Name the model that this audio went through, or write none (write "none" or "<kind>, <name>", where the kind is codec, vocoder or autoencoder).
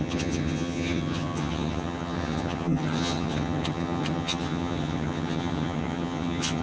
vocoder, HiFi-GAN